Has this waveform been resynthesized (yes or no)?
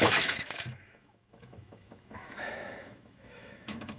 yes